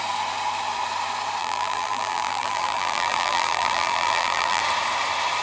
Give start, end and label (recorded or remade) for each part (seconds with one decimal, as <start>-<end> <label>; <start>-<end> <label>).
0.0-1.4 recorded; 1.4-4.6 remade; 4.6-5.4 recorded